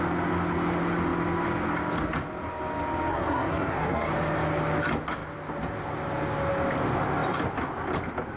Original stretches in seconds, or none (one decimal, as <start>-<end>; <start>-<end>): 0.0-3.1; 4.1-8.4